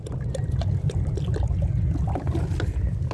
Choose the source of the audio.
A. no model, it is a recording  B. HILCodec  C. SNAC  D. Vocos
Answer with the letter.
A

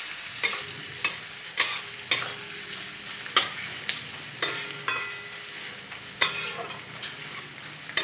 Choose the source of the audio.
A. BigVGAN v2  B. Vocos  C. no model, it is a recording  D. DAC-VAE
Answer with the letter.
C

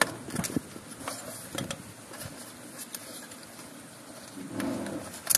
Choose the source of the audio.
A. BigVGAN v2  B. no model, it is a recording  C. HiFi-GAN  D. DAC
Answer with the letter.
B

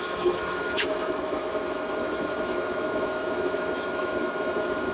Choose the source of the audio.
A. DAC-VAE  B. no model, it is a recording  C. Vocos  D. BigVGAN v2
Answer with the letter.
A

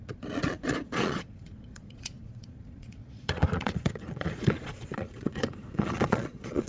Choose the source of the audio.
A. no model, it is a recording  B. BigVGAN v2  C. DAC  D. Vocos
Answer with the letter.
D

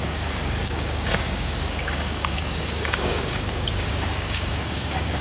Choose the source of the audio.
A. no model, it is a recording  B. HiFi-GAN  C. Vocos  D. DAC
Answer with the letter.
D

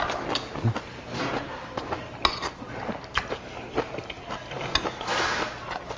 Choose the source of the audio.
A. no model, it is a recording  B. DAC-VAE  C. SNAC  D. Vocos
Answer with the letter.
A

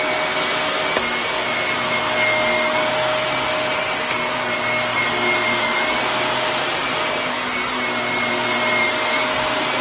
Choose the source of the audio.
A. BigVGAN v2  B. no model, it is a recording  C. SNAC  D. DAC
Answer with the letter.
B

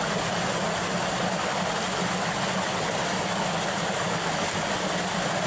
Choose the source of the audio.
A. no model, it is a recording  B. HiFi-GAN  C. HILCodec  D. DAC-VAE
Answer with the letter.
A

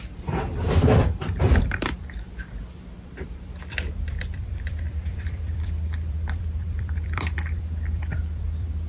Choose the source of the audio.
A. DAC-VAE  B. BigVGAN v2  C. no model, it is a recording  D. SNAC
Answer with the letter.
B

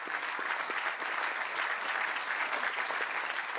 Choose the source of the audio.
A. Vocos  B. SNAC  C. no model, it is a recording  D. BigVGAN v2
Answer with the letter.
C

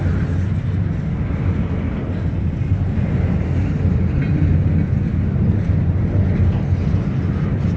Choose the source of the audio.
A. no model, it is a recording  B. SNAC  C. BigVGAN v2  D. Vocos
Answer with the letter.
A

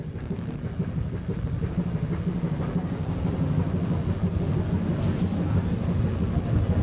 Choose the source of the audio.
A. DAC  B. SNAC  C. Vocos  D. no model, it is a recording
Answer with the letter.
D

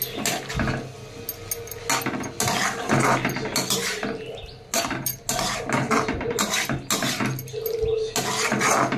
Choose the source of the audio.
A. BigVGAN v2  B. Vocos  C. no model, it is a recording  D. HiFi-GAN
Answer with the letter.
C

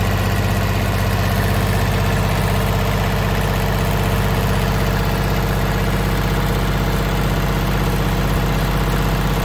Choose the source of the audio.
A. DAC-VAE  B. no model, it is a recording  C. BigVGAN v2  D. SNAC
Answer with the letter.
B